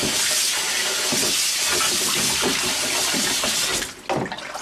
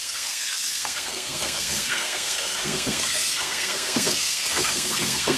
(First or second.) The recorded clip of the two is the first